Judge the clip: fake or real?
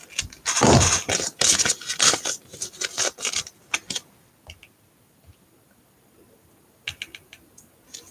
real